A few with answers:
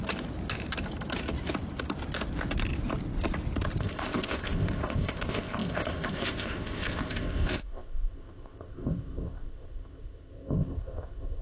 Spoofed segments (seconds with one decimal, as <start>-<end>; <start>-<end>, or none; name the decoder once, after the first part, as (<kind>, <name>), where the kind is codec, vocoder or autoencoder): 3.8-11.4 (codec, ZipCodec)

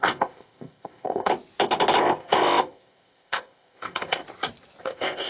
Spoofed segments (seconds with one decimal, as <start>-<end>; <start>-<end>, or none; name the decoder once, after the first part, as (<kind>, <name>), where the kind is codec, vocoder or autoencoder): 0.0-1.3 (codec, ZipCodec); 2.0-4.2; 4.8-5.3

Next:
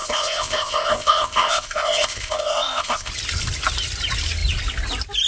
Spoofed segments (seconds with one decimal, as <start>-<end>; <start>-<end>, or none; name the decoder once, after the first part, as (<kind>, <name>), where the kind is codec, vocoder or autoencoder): 0.0-3.1 (codec, ZipCodec)

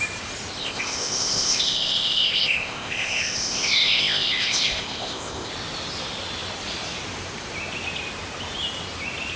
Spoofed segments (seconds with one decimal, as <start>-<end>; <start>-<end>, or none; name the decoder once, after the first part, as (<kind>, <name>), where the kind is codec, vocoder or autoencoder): 0.6-5.5 (codec, ZipCodec)

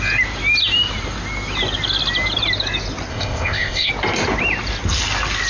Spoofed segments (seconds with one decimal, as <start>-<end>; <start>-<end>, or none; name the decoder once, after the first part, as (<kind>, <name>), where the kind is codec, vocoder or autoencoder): 3.1-3.9 (codec, ZipCodec)

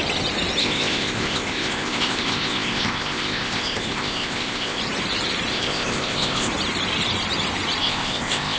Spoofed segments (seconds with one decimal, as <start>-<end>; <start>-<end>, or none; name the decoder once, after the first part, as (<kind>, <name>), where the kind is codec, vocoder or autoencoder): 0.6-4.8 (codec, ZipCodec); 5.5-6.5; 7.8-8.6

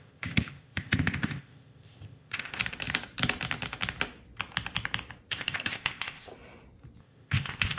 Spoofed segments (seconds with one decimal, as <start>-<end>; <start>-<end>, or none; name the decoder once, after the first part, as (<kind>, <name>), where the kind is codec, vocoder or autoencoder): 0.0-2.6 (codec, ZipCodec); 5.3-6.3; 7.0-7.8

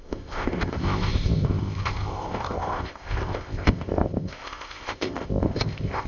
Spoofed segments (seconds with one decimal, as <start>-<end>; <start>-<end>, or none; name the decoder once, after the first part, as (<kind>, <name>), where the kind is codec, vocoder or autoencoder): 0.0-6.1 (codec, ZipCodec)